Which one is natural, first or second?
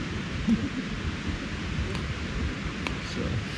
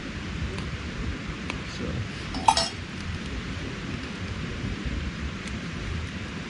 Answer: first